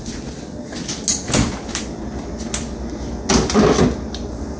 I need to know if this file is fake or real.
real